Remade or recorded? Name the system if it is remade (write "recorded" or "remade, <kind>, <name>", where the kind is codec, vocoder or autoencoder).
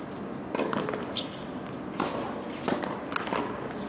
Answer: recorded